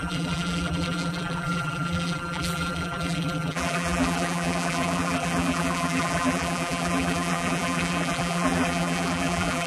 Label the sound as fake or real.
fake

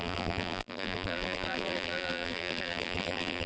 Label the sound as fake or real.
fake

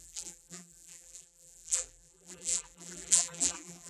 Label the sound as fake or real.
fake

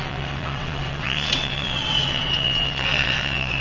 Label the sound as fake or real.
fake